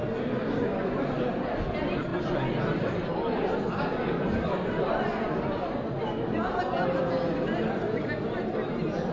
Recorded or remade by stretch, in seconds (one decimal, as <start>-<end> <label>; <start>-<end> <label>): 0.0-9.1 recorded